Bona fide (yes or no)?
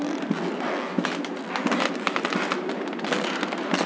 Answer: yes